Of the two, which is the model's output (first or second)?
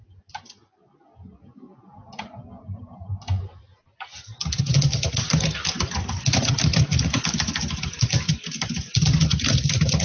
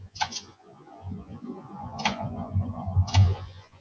second